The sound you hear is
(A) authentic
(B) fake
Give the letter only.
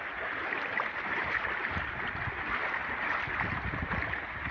A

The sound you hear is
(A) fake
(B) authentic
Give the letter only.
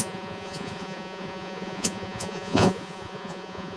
A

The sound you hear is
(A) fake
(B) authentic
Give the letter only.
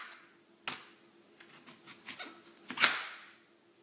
B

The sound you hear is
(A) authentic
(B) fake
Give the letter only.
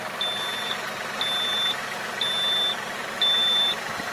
A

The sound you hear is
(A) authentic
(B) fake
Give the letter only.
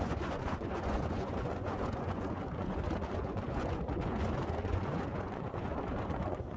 B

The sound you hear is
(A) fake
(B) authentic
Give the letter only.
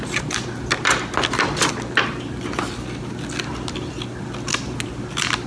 B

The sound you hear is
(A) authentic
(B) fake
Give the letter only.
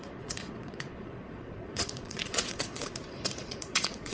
B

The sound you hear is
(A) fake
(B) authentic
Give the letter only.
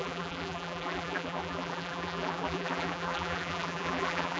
A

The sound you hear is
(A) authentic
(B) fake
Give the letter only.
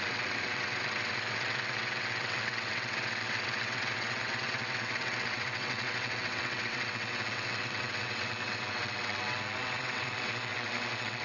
B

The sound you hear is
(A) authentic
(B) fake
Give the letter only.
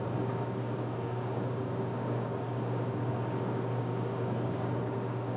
B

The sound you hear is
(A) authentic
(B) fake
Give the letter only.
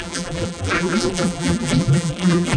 B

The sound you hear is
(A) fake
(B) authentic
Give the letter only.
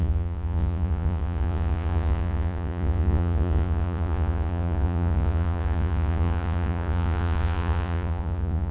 A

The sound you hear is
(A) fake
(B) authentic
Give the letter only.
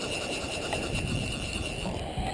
A